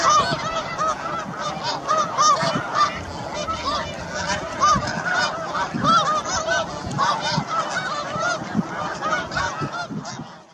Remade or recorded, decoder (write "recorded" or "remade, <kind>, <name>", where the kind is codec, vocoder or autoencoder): recorded